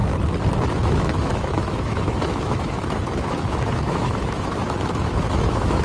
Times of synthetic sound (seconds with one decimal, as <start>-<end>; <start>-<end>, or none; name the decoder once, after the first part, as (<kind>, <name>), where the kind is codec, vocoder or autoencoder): 0.7-5.8 (autoencoder, DAC-VAE)